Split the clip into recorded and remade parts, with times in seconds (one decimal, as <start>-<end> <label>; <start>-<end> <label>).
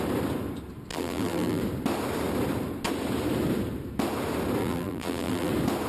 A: 0.0-0.9 recorded; 0.9-1.6 remade; 1.6-4.6 recorded; 4.6-5.5 remade; 5.5-5.9 recorded